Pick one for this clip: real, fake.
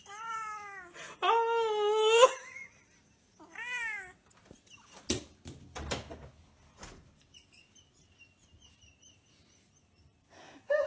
real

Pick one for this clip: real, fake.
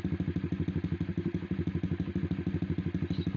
real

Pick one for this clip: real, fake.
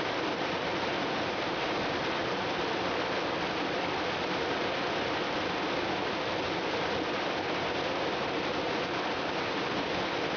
real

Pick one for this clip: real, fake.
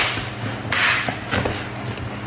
real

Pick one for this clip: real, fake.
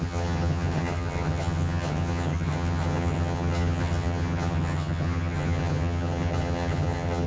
fake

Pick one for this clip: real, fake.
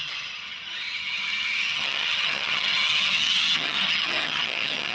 fake